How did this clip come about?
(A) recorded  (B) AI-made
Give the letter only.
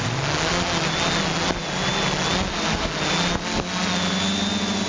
A